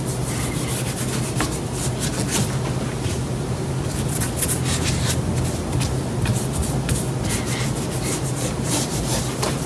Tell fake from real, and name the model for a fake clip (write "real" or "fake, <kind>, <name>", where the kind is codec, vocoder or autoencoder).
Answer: real